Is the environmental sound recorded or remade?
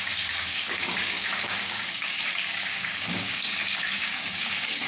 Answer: remade